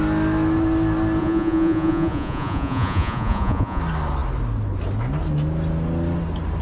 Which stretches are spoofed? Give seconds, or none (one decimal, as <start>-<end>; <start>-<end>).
1.2-3.8